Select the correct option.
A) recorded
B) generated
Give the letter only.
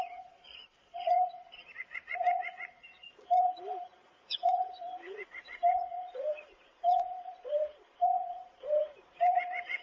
B